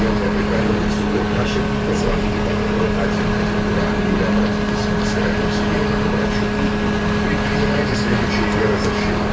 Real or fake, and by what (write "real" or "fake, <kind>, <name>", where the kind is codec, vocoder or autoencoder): real